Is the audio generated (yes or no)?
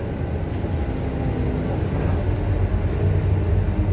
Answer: no